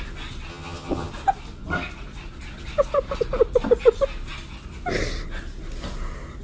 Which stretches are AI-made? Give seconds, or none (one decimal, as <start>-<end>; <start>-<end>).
0.5-1.1